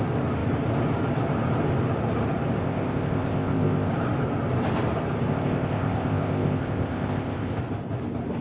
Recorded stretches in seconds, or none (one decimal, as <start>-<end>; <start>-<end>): 0.0-2.6; 3.9-5.3; 7.6-8.4